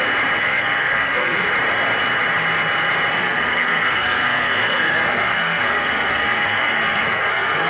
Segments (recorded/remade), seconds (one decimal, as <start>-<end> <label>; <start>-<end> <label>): 0.0-0.4 recorded; 0.4-1.5 remade; 1.5-3.1 recorded; 3.1-7.7 remade